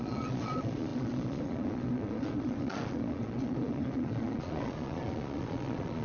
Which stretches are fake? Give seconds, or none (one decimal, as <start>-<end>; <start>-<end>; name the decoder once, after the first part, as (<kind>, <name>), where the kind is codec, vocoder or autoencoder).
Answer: 0.0-6.0 (vocoder, Vocos)